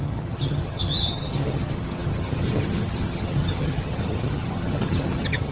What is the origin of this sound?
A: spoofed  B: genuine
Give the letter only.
A